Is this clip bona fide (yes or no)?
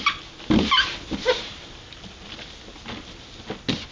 yes